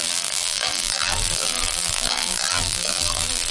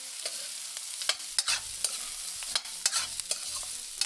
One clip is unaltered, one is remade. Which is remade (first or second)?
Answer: first